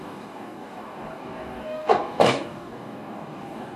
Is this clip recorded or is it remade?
remade